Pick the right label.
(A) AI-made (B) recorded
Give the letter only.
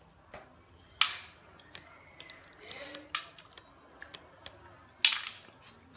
B